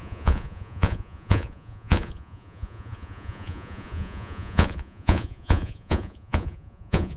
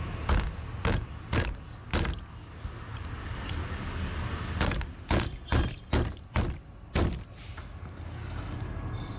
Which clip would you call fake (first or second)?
first